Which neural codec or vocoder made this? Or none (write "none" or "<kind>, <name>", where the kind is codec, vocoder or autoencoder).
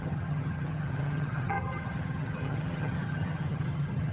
vocoder, HiFi-GAN